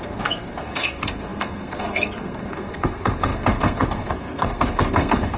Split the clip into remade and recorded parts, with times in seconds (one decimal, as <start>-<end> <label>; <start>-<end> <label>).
0.0-5.4 remade